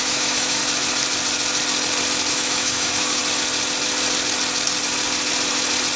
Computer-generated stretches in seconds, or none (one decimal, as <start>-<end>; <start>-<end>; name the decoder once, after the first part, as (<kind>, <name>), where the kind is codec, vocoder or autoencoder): 0.0-0.6 (autoencoder, DAC-VAE); 2.3-3.2